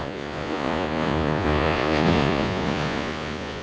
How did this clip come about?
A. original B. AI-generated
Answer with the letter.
B